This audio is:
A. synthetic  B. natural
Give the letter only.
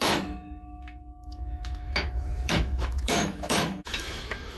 A